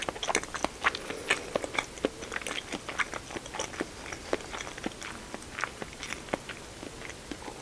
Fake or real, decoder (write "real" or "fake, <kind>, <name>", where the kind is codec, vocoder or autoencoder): real